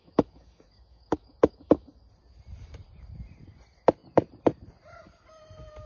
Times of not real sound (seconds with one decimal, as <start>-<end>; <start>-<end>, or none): 0.0-2.1